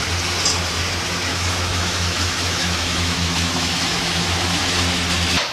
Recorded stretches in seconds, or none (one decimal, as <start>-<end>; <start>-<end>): 0.0-1.3; 4.6-5.5